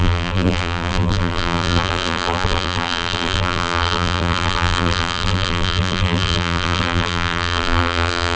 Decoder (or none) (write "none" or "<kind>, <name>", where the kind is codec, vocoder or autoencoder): vocoder, BigVGAN v2